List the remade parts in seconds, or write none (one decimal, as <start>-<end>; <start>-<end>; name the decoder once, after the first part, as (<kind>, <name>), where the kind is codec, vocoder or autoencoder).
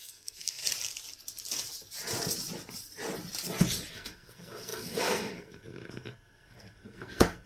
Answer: 0.0-0.6 (codec, SNAC); 3.9-7.5